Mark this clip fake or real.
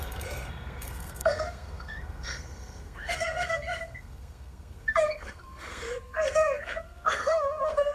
fake